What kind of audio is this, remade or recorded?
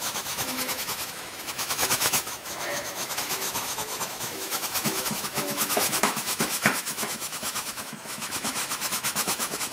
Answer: remade